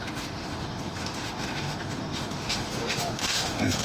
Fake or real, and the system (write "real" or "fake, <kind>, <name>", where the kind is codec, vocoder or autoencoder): fake, autoencoder, DAC-VAE